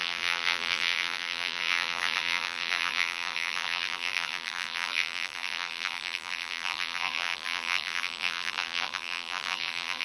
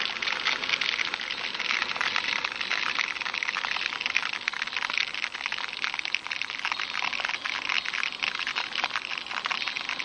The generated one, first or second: first